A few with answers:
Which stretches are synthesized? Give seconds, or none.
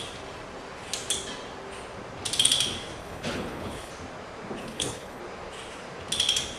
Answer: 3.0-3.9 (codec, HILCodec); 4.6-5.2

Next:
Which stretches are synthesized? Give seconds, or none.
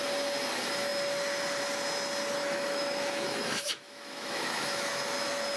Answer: 2.4-4.9 (autoencoder, DAC-VAE)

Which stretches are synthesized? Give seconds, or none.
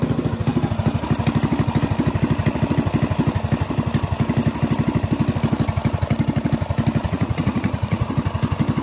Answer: 7.0-8.1 (vocoder, Vocos)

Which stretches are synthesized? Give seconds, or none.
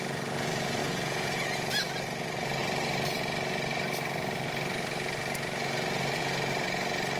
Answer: 0.8-1.7 (vocoder, Vocos)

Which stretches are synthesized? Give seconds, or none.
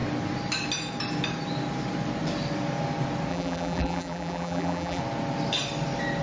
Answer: 3.3-5.0 (vocoder, BigVGAN v2)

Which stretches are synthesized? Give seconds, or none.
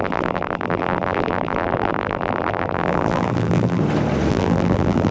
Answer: 0.0-3.8 (vocoder, BigVGAN v2); 4.3-5.1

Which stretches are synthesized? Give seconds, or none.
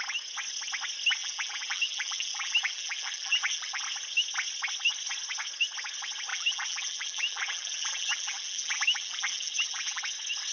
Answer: 1.2-3.8 (vocoder, BigVGAN v2); 6.3-10.0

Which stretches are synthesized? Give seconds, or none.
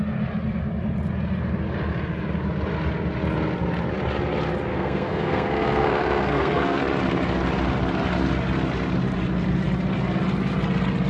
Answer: 4.7-6.8 (codec, SNAC)